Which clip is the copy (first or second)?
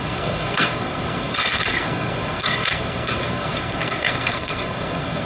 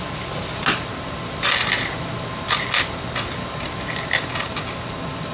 first